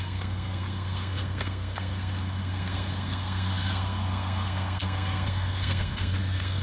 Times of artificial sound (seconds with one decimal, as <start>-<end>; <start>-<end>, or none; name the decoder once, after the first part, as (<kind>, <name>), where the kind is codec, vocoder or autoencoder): 0.0-6.6 (codec, SNAC)